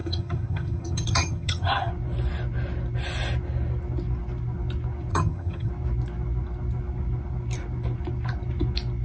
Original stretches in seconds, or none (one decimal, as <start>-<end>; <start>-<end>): 1.9-5.1; 5.7-9.0